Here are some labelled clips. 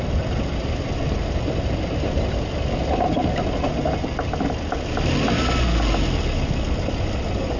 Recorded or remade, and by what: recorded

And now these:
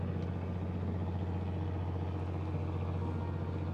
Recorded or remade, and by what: recorded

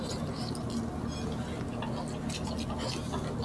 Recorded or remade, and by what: recorded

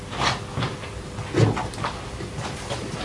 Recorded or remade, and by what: recorded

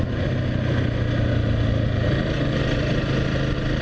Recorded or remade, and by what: recorded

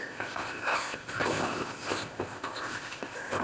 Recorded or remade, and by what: remade, codec, ZipCodec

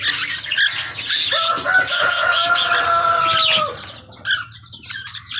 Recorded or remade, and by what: recorded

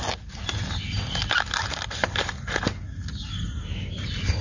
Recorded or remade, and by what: recorded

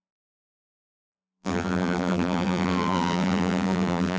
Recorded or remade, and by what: remade, vocoder, BigVGAN v2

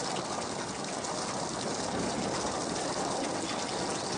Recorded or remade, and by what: recorded